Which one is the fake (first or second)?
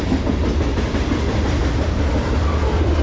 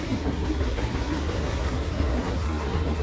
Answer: second